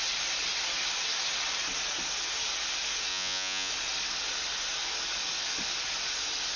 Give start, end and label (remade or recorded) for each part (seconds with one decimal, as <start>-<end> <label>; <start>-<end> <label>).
0.0-3.1 recorded; 3.1-3.7 remade; 3.7-6.6 recorded